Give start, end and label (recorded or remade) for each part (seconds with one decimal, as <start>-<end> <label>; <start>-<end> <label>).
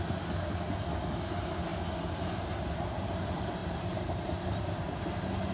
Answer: 0.0-1.7 recorded; 1.7-2.9 remade; 2.9-3.6 recorded; 3.6-5.0 remade; 5.0-5.5 recorded